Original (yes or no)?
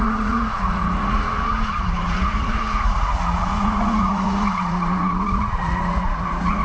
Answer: no